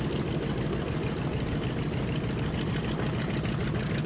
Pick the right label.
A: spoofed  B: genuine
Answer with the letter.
B